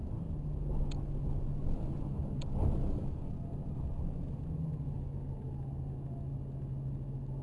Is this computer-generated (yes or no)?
no